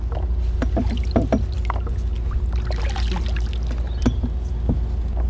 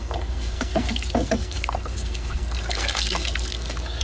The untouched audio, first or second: first